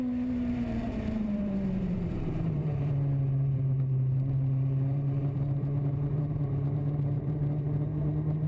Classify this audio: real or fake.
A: fake